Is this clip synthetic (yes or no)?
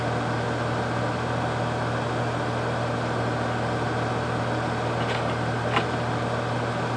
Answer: no